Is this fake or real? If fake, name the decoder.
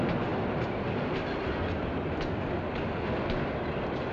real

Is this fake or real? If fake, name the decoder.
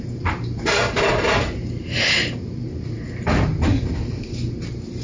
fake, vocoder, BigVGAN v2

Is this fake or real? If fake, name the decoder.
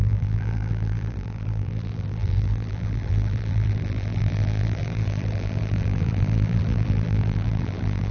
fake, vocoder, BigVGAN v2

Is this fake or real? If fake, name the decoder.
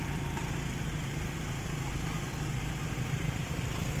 fake, vocoder, BigVGAN v2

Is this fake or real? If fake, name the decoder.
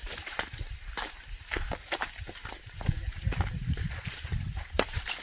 fake, vocoder, BigVGAN v2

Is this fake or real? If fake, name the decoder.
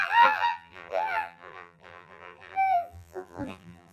fake, vocoder, BigVGAN v2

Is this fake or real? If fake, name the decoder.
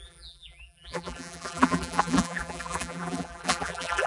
fake, vocoder, BigVGAN v2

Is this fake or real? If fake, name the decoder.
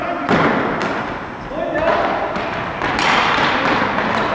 real